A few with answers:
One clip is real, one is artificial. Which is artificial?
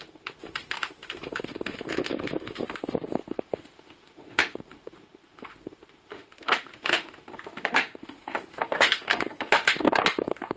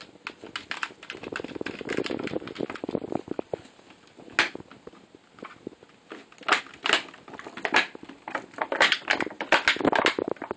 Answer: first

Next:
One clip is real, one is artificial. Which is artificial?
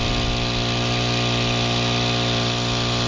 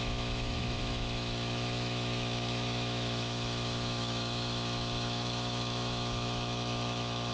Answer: second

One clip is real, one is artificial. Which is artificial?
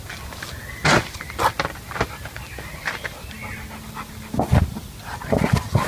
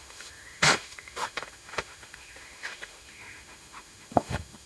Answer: second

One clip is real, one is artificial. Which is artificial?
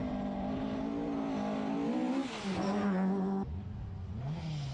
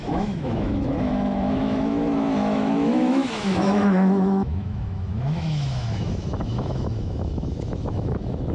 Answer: second